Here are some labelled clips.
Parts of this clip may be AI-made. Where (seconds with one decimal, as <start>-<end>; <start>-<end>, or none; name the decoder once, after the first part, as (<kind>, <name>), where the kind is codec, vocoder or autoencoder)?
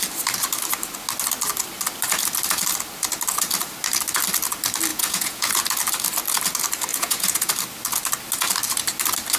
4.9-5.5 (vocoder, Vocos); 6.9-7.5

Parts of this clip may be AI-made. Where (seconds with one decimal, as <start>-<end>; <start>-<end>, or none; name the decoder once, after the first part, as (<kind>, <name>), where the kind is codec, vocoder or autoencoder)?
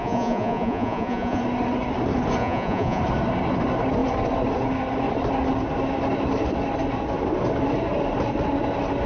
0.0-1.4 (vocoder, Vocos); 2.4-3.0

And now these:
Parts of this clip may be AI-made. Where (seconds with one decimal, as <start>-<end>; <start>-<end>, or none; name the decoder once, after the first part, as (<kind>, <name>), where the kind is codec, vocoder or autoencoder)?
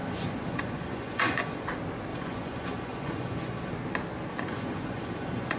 0.0-1.7 (vocoder, Vocos); 2.1-3.7; 4.3-5.6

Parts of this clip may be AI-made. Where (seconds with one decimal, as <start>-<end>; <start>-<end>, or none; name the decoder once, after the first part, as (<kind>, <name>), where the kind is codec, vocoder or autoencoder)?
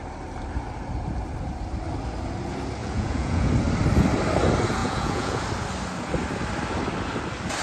2.8-3.5 (vocoder, Vocos); 4.8-5.4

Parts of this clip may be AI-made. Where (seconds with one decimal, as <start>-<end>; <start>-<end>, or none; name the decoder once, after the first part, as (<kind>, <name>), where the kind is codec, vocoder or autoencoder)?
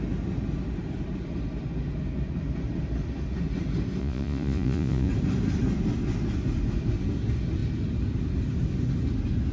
4.0-5.1 (vocoder, Vocos)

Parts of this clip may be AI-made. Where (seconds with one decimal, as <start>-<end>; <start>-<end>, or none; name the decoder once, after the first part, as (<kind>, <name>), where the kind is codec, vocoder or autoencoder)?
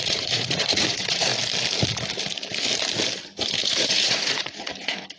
0.0-1.3 (vocoder, Vocos); 3.7-5.2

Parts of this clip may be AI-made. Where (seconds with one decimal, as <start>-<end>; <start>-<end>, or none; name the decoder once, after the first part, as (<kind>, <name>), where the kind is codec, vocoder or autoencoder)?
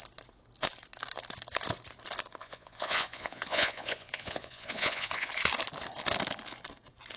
2.4-5.3 (vocoder, Vocos)